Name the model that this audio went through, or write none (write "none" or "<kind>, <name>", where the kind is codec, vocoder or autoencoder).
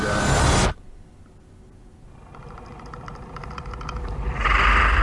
none